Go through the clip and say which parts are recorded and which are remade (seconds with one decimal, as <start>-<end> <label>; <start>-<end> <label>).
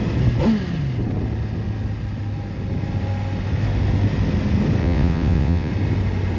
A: 0.0-4.8 recorded; 4.8-5.7 remade; 5.7-6.4 recorded